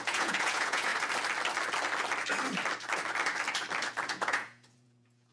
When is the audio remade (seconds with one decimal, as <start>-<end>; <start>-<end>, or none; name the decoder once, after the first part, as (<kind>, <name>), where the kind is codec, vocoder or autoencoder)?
0.0-0.9 (vocoder, Vocos); 4.1-5.3